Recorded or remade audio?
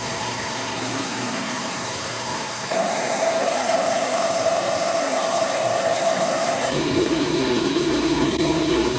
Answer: remade